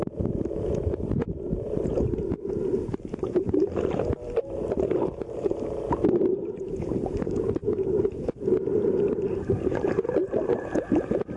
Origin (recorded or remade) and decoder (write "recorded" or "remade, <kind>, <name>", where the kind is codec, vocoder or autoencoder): remade, vocoder, BigVGAN v2